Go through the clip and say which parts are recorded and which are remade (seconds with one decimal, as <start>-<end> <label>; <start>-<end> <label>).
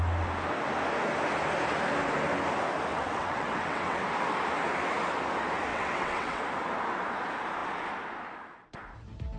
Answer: 0.0-2.9 recorded; 2.9-4.0 remade; 4.0-5.7 recorded; 5.7-6.4 remade; 6.4-9.4 recorded